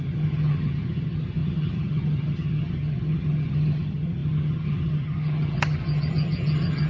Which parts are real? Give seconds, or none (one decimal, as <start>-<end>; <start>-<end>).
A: none